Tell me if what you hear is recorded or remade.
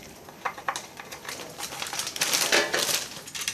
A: remade